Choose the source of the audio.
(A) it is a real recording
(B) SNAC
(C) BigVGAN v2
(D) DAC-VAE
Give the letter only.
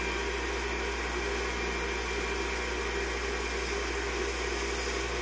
A